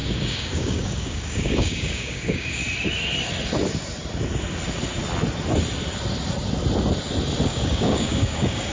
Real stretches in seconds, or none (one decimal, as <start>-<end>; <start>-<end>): 2.6-7.5